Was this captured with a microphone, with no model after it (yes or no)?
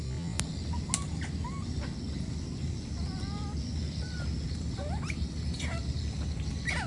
yes